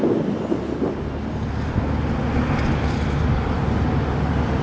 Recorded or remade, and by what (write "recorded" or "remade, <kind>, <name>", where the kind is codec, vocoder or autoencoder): recorded